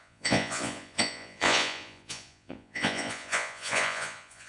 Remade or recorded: remade